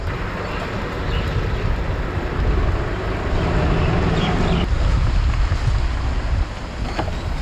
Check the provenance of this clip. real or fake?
real